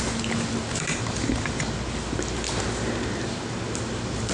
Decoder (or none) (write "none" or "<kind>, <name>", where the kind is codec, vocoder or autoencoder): none